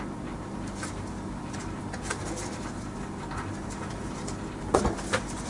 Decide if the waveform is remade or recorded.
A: recorded